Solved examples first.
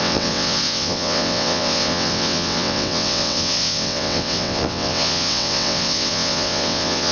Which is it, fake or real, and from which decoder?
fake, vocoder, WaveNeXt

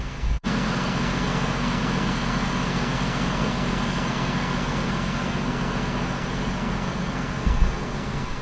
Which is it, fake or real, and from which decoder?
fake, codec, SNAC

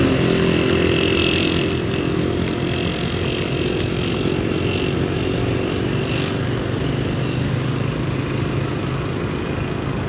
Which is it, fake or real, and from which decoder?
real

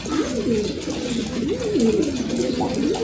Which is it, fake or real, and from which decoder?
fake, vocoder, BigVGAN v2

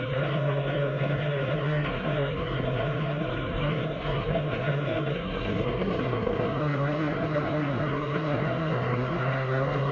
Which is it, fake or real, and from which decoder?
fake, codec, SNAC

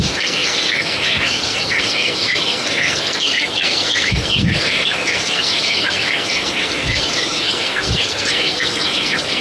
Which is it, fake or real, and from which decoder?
fake, codec, SNAC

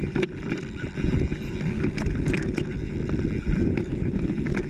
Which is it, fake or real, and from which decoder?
real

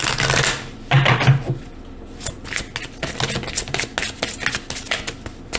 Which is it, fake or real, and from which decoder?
real